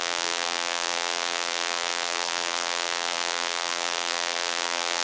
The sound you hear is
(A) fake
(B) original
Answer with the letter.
A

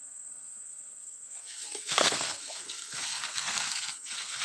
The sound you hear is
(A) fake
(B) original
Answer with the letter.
A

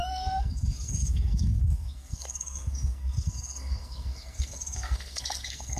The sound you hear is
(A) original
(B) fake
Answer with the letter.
B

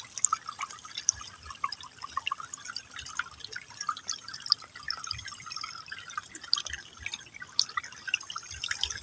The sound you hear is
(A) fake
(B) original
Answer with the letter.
B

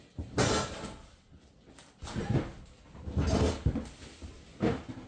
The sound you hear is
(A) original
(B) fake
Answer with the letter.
A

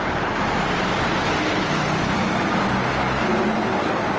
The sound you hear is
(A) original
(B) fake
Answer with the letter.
A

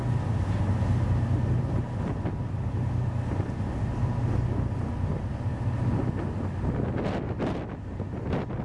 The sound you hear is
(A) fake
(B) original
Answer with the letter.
B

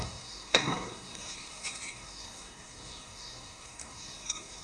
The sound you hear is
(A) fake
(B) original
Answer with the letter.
A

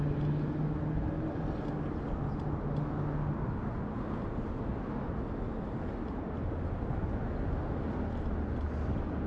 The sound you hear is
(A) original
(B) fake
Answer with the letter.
A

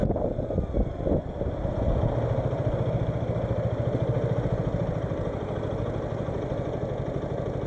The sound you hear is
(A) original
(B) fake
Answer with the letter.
A